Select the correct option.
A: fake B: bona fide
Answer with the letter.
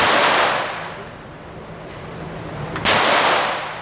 B